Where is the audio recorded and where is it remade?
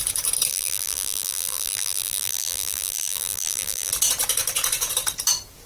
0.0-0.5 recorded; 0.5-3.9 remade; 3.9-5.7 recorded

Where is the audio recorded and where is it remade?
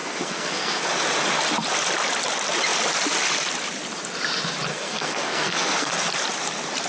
0.0-0.9 remade; 0.9-4.7 recorded; 4.7-5.9 remade; 5.9-6.9 recorded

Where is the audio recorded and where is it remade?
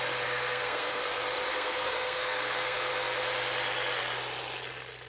0.0-1.0 remade; 1.0-1.5 recorded; 1.5-2.9 remade; 2.9-5.1 recorded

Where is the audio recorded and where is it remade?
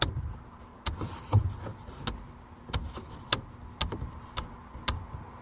0.0-5.4 recorded